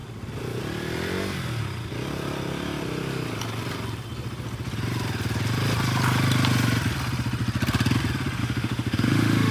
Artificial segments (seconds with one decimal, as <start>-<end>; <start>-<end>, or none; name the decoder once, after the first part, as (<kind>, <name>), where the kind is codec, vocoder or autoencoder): 8.4-9.5 (autoencoder, DAC-VAE)